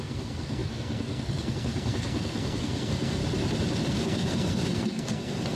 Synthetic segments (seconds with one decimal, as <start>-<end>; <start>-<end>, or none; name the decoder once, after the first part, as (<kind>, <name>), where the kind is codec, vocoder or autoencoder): 0.0-3.2 (codec, SNAC); 3.9-5.6